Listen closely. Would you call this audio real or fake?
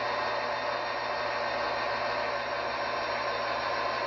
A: real